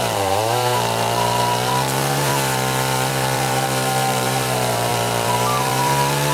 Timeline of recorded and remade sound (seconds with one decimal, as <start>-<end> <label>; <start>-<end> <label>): 0.0-2.3 remade; 2.3-3.1 recorded; 3.1-6.3 remade